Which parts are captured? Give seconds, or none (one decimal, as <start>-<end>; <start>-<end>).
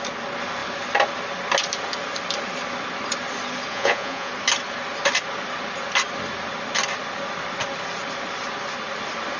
0.0-3.7; 4.3-9.4